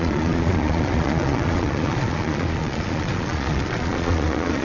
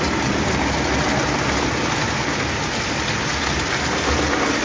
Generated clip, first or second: first